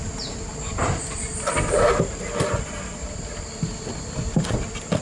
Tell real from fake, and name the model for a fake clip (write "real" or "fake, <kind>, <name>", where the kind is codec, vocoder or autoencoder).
real